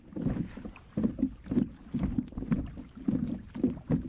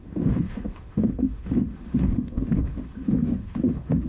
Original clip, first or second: first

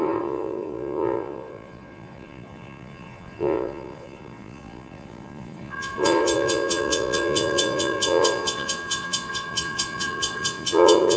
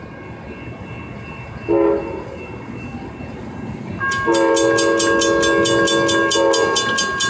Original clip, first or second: second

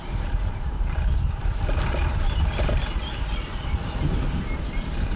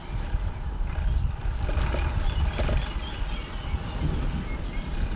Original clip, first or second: second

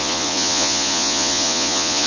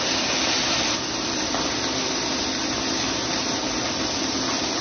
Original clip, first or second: second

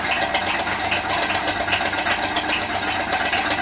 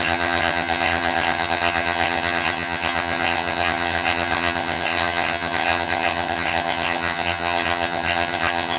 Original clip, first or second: first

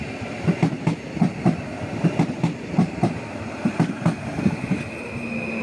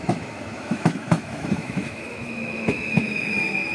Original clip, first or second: first